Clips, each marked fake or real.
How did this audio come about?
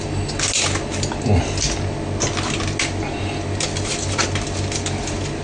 real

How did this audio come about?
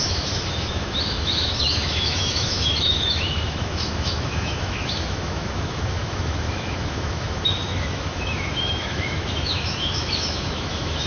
fake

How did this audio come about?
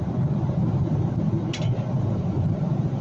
real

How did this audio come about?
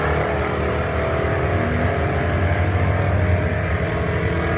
real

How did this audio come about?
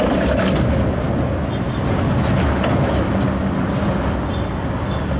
real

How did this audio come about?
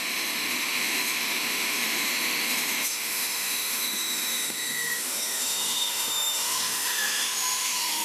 fake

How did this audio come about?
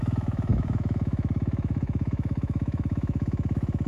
fake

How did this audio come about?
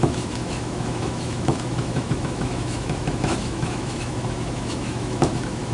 fake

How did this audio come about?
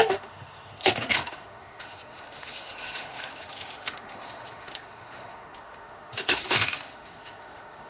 fake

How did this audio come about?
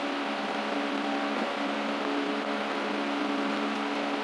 real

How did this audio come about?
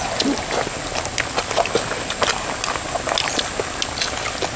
real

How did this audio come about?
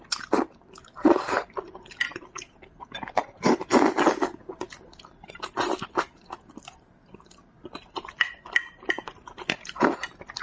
real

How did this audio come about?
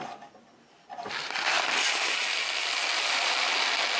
real